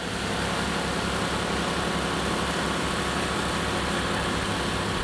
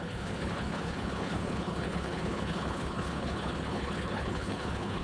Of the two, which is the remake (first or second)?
second